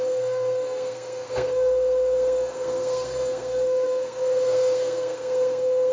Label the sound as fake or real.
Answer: fake